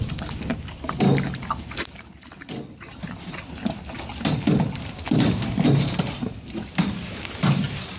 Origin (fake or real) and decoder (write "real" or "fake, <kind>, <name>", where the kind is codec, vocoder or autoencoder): real